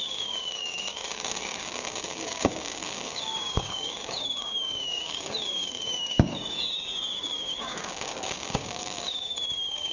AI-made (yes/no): yes